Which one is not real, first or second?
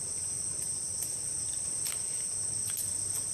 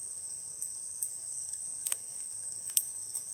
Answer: second